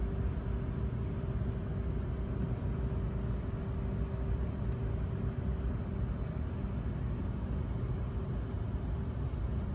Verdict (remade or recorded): recorded